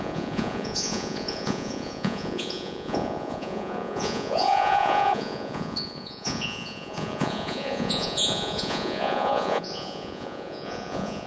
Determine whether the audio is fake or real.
fake